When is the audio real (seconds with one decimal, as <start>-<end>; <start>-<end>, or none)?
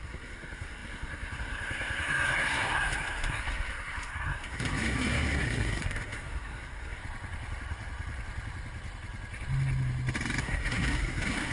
7.0-10.4